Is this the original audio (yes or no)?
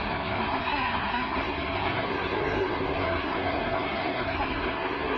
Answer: no